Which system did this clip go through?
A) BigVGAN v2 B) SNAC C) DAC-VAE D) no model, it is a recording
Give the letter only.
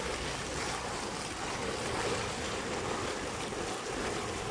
D